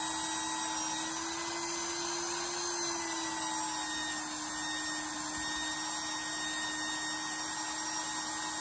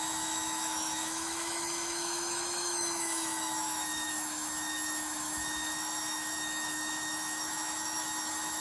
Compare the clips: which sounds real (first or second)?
first